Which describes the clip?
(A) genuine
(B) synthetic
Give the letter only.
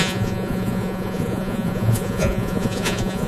B